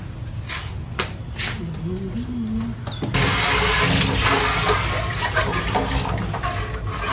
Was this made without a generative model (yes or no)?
yes